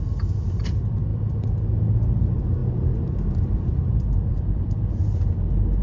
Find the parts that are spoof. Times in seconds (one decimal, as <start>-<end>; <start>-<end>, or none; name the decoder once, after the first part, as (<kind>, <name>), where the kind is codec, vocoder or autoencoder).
1.1-1.9 (vocoder, BigVGAN v2); 2.6-4.9